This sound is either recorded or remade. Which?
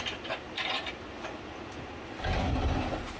recorded